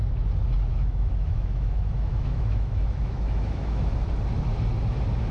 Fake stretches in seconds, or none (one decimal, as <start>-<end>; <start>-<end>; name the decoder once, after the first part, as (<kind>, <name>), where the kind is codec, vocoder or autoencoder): 0.7-3.9 (autoencoder, DAC-VAE)